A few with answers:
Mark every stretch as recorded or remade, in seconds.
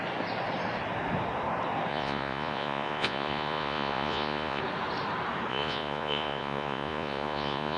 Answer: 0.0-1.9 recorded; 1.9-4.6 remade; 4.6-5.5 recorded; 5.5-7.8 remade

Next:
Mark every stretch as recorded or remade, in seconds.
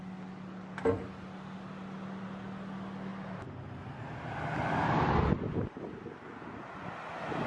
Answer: 0.0-7.5 recorded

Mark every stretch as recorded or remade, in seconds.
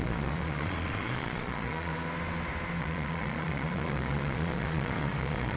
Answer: 0.0-1.9 remade; 1.9-2.8 recorded; 2.8-5.6 remade